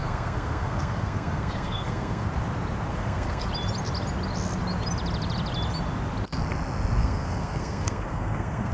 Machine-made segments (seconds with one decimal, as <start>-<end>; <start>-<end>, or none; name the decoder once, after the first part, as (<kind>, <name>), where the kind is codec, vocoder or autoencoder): 0.0-2.3 (codec, SNAC); 2.9-3.5; 7.0-8.7